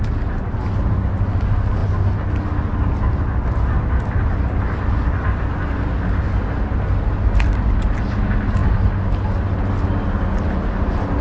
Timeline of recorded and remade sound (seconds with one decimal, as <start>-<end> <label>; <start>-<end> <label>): 0.0-11.2 recorded